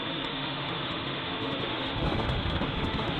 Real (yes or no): no